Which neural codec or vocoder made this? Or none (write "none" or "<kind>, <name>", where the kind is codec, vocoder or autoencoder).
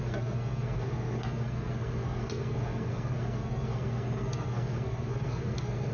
codec, SNAC